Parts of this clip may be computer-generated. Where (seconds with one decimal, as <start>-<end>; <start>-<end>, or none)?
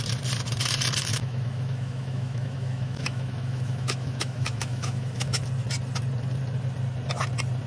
1.1-5.4